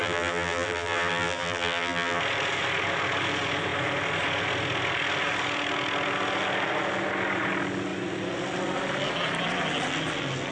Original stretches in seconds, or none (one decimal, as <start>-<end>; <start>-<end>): 2.2-10.5